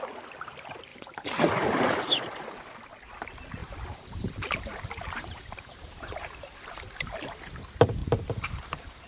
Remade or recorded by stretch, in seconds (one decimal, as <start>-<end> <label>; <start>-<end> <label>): 0.0-0.9 recorded; 0.9-2.3 remade; 2.3-3.6 recorded; 3.6-7.5 remade; 7.5-8.0 recorded; 8.0-9.1 remade